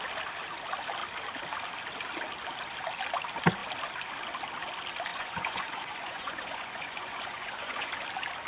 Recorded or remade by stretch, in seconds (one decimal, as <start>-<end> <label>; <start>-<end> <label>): 0.0-5.1 recorded; 5.1-7.9 remade; 7.9-8.5 recorded